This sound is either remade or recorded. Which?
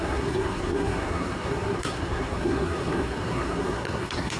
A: remade